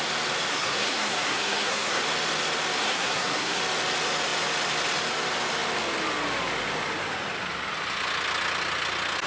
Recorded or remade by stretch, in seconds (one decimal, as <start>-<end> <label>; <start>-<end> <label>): 0.0-0.5 recorded; 0.5-2.0 remade; 2.0-2.8 recorded; 2.8-3.6 remade; 3.6-9.3 recorded